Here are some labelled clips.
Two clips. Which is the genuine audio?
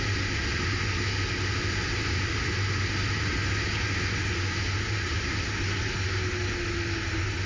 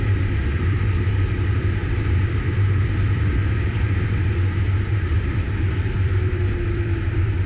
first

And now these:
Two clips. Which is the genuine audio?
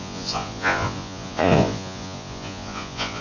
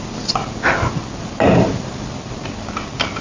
second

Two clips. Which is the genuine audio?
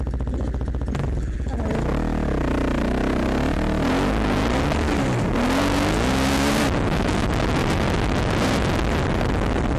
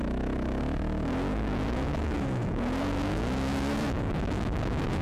first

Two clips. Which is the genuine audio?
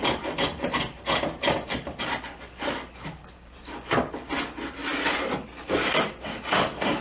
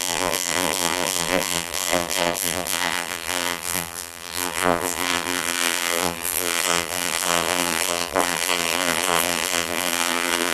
first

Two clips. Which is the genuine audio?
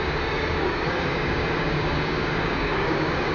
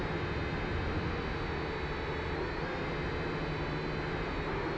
second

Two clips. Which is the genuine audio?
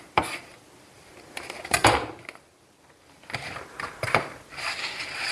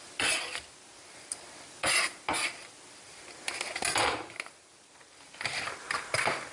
second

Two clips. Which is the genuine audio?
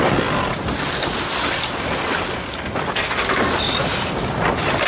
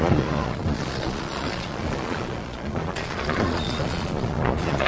first